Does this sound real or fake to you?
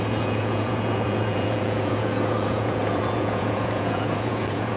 fake